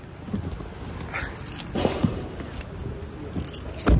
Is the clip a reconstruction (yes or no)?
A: no